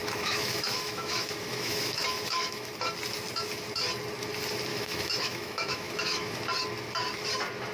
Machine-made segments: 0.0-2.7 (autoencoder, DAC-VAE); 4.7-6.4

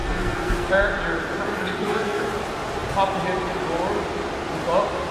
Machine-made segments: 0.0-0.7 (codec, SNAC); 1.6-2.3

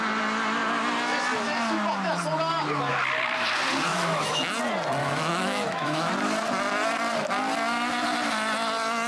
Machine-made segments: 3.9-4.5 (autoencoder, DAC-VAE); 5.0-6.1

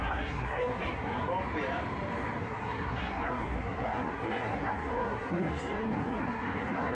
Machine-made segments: 0.0-1.3 (codec, SNAC); 2.4-6.9

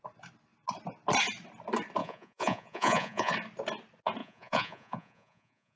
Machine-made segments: 2.0-3.3 (vocoder, Vocos); 4.2-5.8

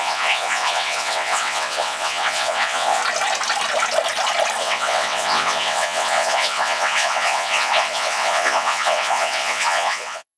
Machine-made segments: 0.0-3.0 (vocoder, WaveNeXt); 4.6-10.4

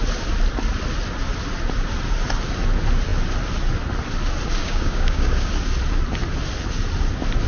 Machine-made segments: 4.6-5.5 (codec, DAC)

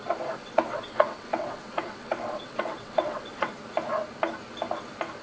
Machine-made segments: 0.4-3.5 (vocoder, WaveNeXt)